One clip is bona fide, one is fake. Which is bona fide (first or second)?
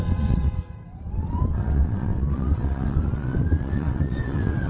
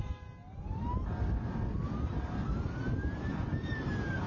second